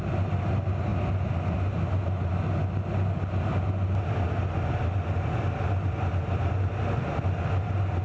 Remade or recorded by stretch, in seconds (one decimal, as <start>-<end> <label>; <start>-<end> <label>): 0.0-8.0 recorded